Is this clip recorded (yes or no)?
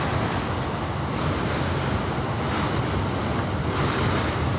yes